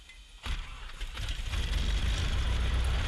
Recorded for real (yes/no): yes